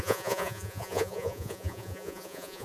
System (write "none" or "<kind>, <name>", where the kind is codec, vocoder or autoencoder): vocoder, Vocos